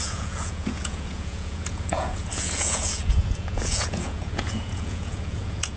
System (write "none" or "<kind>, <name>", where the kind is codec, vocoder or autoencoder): vocoder, Vocos